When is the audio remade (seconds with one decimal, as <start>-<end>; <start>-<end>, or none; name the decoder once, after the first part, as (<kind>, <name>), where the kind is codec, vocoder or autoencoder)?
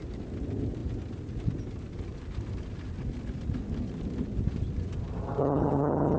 5.4-6.2 (vocoder, HiFi-GAN)